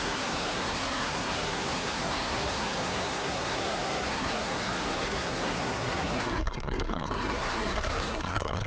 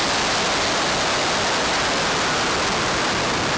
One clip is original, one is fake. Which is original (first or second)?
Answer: second